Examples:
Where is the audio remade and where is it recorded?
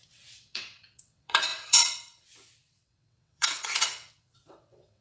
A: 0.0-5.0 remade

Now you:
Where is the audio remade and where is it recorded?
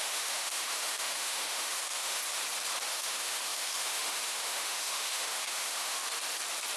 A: 0.0-2.2 remade; 2.2-2.9 recorded; 2.9-6.0 remade; 6.0-6.8 recorded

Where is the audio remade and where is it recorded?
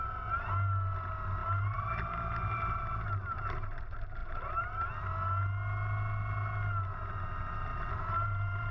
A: 0.0-1.4 recorded; 1.4-2.9 remade; 2.9-7.7 recorded; 7.7-8.7 remade